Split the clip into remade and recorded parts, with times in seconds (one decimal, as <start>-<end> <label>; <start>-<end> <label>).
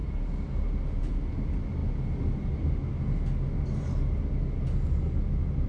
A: 0.0-5.7 recorded